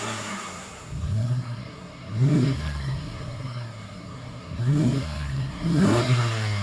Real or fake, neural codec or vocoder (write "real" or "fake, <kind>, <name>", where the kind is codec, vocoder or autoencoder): fake, codec, SNAC